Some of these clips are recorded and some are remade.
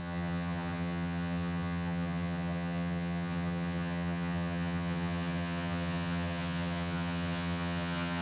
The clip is remade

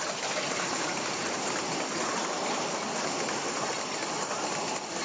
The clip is recorded